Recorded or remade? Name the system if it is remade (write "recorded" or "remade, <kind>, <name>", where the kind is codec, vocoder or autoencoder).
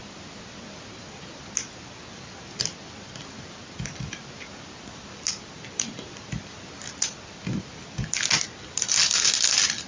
recorded